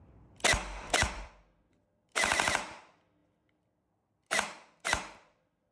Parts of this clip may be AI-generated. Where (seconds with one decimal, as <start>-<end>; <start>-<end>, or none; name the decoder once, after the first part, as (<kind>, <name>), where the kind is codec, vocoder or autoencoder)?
0.6-1.3 (vocoder, BigVGAN v2); 1.8-2.5; 3.2-5.7